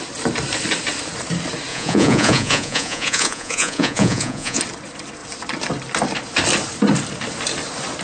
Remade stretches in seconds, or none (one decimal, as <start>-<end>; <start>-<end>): 1.7-4.6